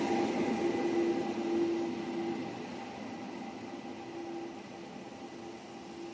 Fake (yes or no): no